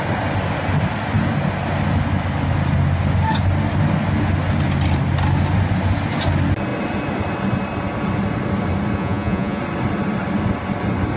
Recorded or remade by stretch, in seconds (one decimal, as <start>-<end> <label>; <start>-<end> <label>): 0.0-9.0 recorded; 9.0-9.6 remade; 9.6-11.2 recorded